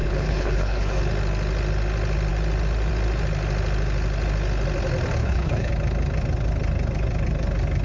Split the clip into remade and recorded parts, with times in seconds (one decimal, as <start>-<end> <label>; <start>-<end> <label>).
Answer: 0.0-1.0 remade; 1.0-5.2 recorded; 5.2-5.7 remade; 5.7-7.8 recorded